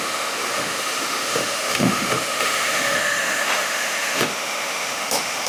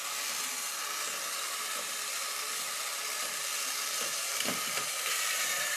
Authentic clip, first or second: second